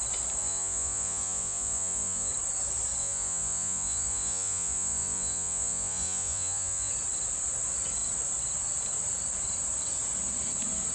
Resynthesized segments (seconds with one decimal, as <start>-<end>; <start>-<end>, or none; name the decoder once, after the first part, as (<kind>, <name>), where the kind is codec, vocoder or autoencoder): 0.4-2.3 (vocoder, Vocos); 3.0-6.9